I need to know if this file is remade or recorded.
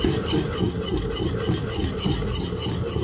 recorded